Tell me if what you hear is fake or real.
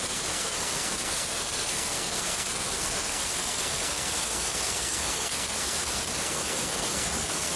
fake